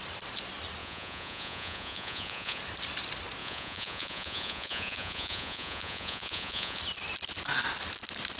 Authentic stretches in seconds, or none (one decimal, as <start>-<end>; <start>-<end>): 0.0-0.8; 2.6-3.4; 6.8-8.4